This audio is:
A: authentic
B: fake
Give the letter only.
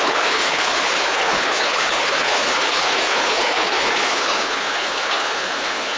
B